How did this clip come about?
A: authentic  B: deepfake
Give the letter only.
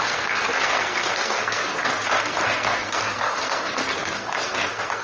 B